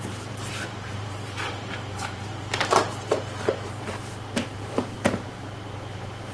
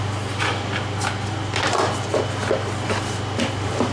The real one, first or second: second